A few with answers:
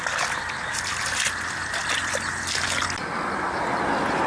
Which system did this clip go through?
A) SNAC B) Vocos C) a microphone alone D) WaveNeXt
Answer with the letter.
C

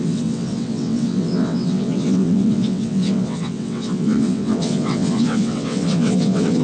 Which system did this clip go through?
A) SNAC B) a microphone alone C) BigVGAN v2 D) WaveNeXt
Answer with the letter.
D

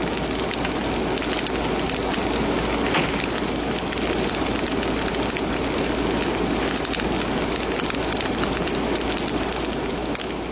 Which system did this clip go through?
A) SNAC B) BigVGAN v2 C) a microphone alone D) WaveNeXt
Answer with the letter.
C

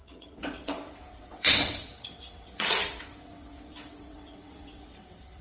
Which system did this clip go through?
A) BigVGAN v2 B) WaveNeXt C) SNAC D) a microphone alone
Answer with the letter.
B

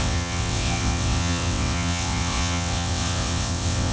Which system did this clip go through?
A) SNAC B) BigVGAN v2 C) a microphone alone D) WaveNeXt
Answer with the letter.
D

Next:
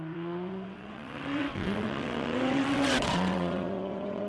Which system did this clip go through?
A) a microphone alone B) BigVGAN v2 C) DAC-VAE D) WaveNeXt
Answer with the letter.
D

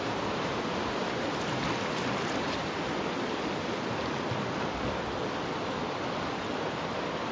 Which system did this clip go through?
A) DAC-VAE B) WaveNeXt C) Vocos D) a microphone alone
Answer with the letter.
D